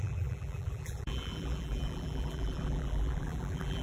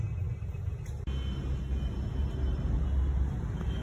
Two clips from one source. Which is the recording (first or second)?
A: second